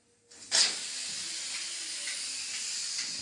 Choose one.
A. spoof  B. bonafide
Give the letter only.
B